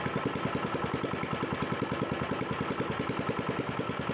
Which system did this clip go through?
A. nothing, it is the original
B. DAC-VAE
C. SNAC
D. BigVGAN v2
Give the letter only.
A